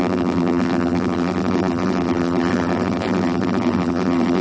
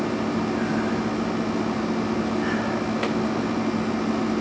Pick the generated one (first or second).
first